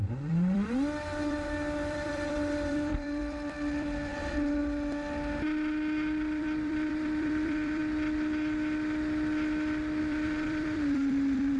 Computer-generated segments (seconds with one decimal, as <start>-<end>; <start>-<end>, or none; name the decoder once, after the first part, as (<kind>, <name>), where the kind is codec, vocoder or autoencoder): 0.0-4.6 (vocoder, BigVGAN v2); 6.4-7.8; 10.0-11.6